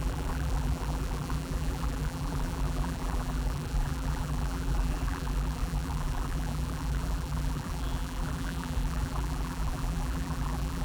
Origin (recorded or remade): remade